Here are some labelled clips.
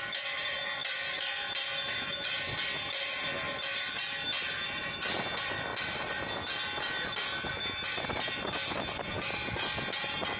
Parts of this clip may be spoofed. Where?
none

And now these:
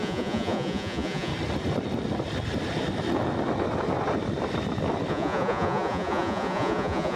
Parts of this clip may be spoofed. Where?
0.0-1.3 (vocoder, Vocos); 5.1-7.2

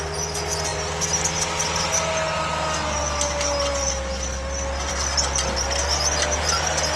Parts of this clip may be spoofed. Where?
none

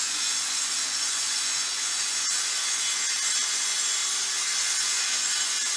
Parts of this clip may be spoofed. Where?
0.0-4.0 (vocoder, Vocos); 4.6-5.8

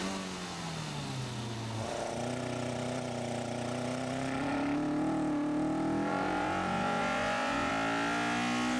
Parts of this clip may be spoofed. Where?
6.1-7.7 (vocoder, Vocos)

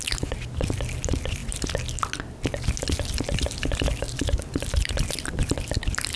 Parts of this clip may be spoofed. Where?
none